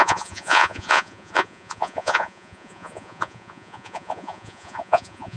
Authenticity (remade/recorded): remade